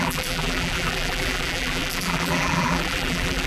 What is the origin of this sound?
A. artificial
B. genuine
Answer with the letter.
A